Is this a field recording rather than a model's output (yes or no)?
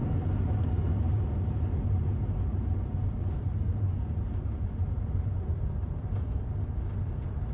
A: no